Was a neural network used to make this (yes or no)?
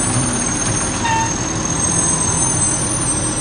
yes